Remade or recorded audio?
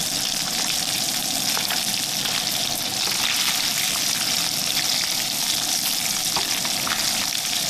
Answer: recorded